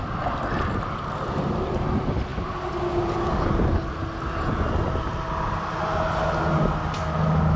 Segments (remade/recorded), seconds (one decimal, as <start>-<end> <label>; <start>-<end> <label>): 0.0-7.6 recorded